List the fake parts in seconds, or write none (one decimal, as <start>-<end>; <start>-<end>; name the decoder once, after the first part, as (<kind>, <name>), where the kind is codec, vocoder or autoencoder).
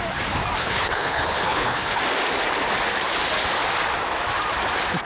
0.6-2.0 (codec, HILCodec)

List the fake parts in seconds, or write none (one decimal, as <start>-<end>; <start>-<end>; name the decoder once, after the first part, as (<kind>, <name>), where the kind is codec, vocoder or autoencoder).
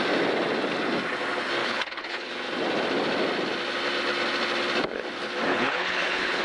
1.6-2.3 (codec, HILCodec); 5.5-6.4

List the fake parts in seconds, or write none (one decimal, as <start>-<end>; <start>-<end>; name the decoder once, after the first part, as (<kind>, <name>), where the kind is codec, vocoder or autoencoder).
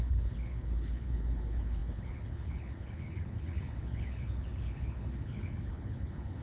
0.0-6.4 (codec, HILCodec)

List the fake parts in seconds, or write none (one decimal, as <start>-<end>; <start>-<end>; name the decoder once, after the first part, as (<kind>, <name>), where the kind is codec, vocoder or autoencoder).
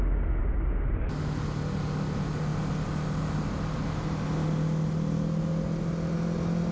none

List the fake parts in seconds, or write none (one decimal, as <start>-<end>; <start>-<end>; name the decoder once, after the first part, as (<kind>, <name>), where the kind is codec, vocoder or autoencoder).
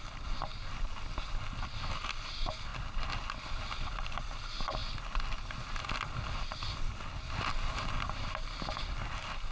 none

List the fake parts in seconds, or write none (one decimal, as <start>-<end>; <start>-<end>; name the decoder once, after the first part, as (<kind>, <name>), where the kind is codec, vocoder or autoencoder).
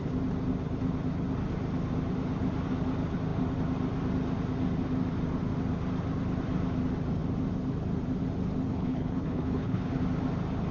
8.7-10.0 (codec, HILCodec)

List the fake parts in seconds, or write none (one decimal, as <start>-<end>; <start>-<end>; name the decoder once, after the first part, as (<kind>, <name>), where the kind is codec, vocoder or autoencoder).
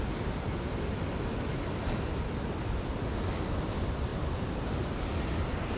none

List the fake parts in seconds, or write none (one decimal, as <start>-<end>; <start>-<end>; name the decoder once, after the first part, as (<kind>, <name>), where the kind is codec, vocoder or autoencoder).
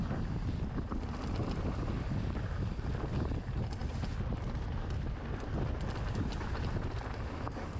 none